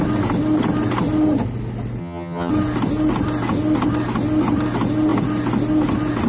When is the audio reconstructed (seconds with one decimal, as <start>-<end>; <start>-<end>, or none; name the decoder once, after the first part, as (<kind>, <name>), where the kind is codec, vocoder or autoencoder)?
2.0-2.5 (vocoder, HiFi-GAN)

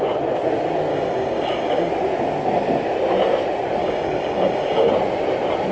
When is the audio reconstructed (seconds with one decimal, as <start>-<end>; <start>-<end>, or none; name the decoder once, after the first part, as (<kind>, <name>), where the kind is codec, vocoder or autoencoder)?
0.9-1.9 (codec, DAC); 3.8-4.9

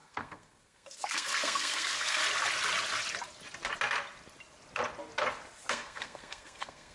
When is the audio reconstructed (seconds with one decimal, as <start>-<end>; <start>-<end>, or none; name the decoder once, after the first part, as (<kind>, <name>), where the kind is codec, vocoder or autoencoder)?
0.0-2.2 (codec, SNAC); 5.7-6.9

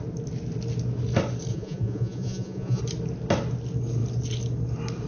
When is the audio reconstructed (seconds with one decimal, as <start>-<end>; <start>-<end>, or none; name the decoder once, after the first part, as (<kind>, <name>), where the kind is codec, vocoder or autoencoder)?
1.5-2.8 (vocoder, Vocos)

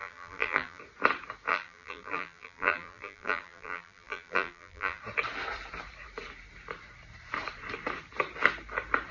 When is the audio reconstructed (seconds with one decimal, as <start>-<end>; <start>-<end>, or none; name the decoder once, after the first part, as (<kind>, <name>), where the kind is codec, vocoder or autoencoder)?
0.0-0.8 (vocoder, BigVGAN v2); 1.5-5.0

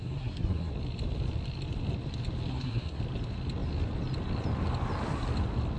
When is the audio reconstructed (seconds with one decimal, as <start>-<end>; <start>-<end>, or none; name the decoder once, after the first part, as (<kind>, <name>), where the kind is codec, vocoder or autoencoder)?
0.0-0.7 (codec, SNAC); 2.5-3.0

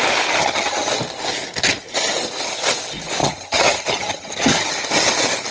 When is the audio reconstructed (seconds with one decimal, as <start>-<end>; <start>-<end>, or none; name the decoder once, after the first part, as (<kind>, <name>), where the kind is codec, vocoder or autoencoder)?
0.4-0.9 (vocoder, HiFi-GAN); 3.2-4.7

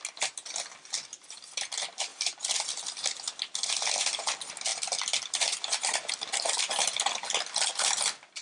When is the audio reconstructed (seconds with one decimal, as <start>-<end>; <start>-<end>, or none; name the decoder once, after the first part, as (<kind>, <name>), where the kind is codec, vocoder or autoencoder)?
none